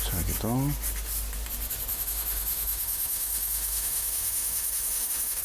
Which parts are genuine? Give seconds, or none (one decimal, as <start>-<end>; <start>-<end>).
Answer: 0.0-1.9